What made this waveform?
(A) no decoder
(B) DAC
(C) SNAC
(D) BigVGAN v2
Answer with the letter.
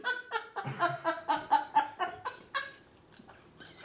A